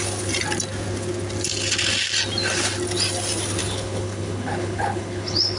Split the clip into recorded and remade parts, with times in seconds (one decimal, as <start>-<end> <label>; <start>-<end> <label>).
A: 0.0-3.6 recorded; 3.6-5.6 remade